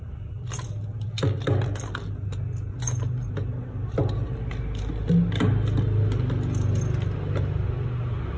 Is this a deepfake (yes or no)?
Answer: no